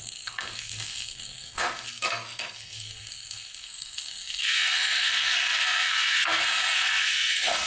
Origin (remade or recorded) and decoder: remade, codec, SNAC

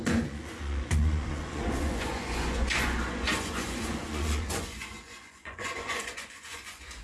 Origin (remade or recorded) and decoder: remade, vocoder, Vocos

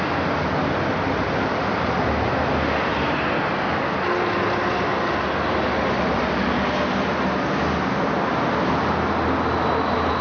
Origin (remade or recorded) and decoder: recorded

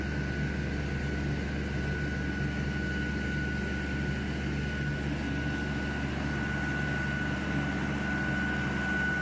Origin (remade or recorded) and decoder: recorded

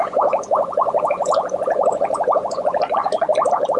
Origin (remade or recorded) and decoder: remade, vocoder, Vocos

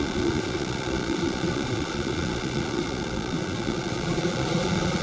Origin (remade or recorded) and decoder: remade, vocoder, Vocos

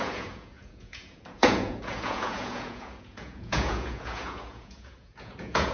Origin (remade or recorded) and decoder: remade, vocoder, Vocos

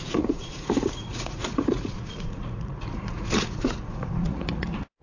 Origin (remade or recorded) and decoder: remade, vocoder, Vocos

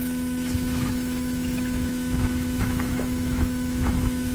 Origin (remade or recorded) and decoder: remade, autoencoder, DAC-VAE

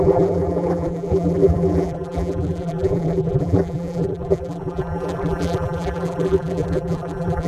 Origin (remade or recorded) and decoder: remade, vocoder, BigVGAN v2